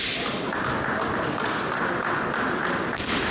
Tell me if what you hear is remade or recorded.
recorded